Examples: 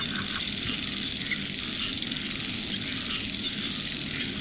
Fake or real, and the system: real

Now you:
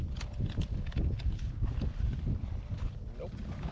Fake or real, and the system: real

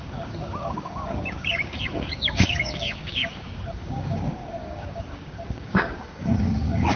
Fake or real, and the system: fake, codec, DAC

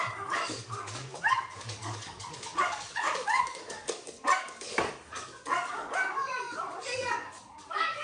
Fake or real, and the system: fake, codec, DAC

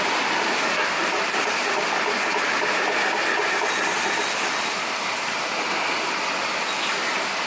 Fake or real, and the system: real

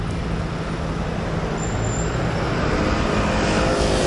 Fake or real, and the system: real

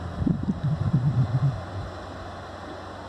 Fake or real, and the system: real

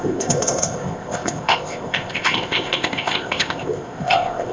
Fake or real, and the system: fake, codec, ZipCodec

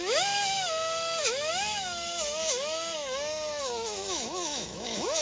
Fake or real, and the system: fake, autoencoder, DAC-VAE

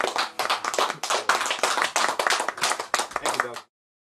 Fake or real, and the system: real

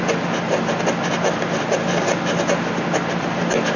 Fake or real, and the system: real